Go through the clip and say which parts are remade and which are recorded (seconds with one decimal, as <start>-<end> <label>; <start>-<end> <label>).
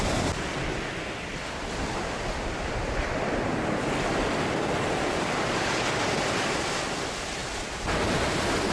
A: 0.0-8.7 recorded